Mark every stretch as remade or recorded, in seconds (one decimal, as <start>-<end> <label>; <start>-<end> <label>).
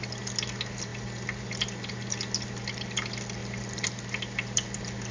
0.0-0.9 recorded; 0.9-1.4 remade; 1.4-3.4 recorded; 3.4-5.1 remade